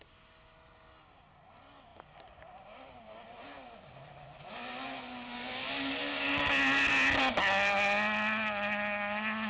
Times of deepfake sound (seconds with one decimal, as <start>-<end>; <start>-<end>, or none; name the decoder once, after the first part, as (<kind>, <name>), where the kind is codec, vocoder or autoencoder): none